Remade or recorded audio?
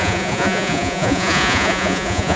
remade